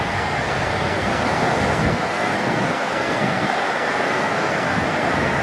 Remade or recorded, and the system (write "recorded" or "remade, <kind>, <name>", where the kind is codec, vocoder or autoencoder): remade, codec, SNAC